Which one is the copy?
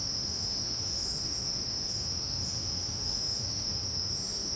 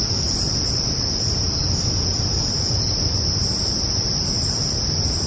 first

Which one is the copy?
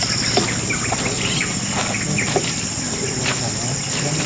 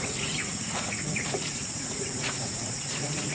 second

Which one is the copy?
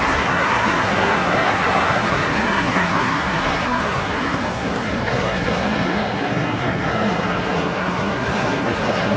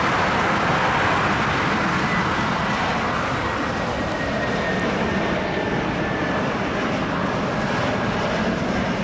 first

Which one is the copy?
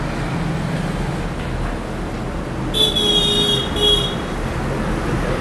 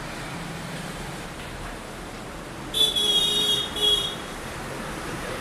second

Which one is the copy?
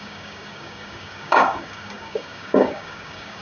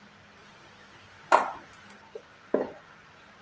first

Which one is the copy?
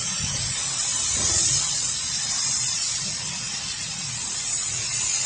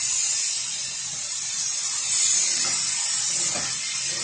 first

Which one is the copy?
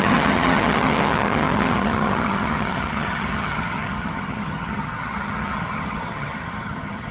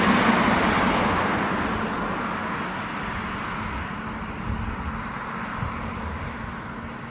first